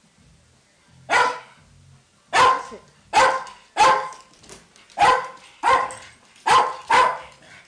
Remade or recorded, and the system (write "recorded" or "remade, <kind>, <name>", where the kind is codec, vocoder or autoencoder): recorded